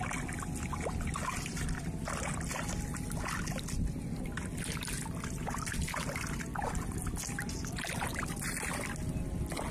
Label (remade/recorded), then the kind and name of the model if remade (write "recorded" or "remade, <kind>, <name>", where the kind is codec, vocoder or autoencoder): recorded